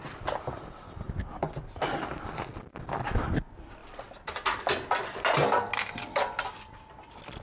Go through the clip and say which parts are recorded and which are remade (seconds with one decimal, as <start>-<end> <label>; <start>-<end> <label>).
0.0-7.4 recorded